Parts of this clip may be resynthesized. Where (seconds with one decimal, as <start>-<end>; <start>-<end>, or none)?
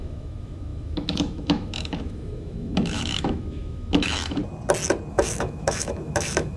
0.0-4.4; 5.1-6.6